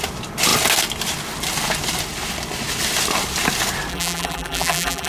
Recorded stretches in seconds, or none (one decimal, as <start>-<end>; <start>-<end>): 0.0-3.9